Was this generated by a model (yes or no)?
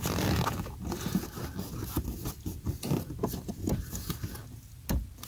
no